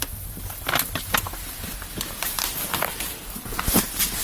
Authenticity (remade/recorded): recorded